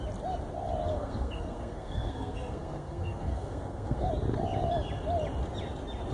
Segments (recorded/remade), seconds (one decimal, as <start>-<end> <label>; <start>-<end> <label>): 0.0-0.9 recorded; 0.9-4.1 remade; 4.1-6.1 recorded